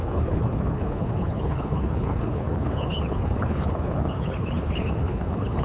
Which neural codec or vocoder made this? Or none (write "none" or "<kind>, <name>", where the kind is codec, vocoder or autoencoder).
codec, HILCodec